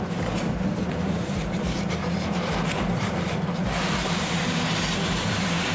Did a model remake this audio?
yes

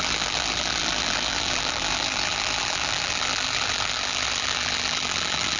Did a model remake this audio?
yes